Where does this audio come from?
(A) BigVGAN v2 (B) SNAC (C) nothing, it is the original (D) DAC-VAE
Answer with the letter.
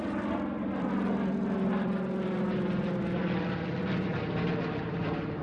A